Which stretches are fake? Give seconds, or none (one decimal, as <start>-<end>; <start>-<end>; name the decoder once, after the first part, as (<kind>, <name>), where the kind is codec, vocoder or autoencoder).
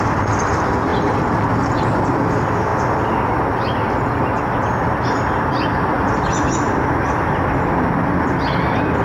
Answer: none